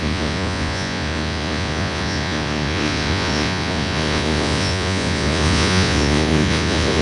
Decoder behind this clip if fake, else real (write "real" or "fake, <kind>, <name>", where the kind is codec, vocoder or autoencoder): fake, vocoder, Vocos